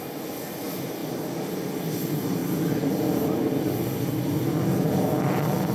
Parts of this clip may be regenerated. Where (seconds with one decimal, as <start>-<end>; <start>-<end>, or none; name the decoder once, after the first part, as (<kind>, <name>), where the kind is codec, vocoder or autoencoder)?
none